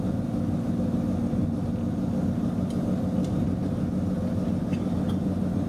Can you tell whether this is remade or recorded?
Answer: recorded